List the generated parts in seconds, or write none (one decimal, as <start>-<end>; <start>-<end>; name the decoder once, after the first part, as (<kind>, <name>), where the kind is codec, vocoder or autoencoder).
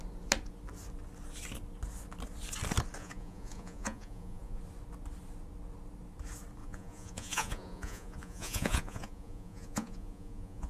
3.0-4.6 (vocoder, Vocos); 6.6-10.7